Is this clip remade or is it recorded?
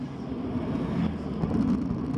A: recorded